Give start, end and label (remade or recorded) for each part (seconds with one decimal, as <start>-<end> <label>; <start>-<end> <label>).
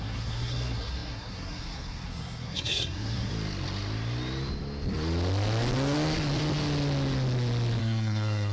0.0-3.3 remade; 3.3-7.8 recorded; 7.8-8.5 remade